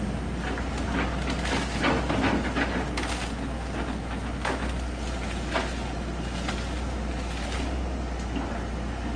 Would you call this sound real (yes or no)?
yes